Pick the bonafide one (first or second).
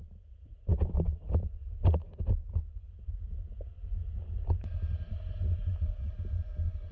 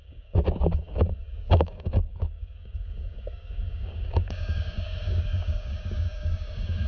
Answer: first